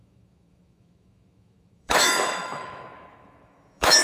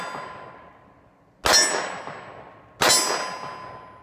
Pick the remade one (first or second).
first